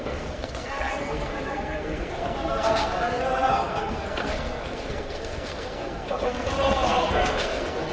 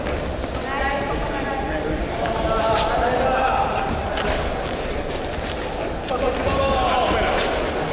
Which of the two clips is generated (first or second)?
first